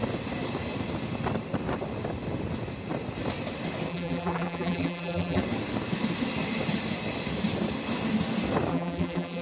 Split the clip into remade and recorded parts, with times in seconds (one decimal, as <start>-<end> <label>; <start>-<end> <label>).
0.0-3.9 recorded; 3.9-5.4 remade; 5.4-8.7 recorded; 8.7-9.4 remade